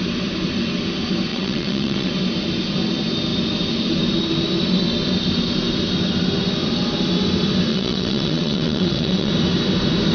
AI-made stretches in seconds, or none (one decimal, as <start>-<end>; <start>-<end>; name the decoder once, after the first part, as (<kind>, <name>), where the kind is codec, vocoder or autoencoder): 1.3-2.1 (vocoder, WaveNeXt); 7.7-9.3